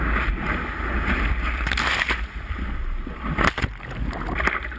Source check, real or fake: real